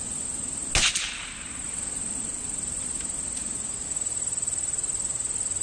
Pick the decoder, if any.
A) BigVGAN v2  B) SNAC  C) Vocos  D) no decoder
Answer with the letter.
D